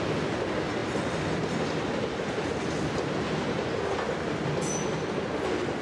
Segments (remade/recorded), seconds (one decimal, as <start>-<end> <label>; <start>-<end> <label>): 0.0-5.8 recorded